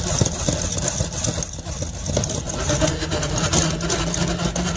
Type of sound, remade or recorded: recorded